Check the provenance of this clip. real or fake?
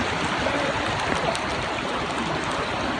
real